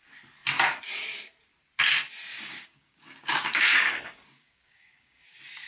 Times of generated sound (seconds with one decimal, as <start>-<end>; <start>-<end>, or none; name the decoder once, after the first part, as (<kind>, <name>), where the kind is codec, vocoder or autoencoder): 2.3-5.7 (codec, DAC)